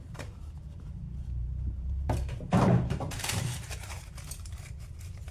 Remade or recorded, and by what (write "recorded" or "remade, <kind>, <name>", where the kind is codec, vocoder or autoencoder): remade, vocoder, BigVGAN v2